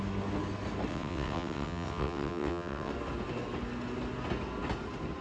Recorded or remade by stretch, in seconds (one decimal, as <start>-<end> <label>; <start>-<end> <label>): 0.0-0.9 recorded; 0.9-2.9 remade; 2.9-5.2 recorded